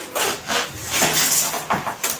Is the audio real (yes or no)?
yes